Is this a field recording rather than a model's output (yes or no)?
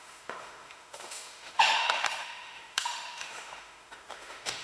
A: no